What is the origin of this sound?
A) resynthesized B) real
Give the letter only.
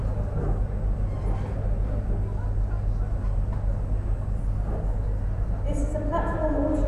B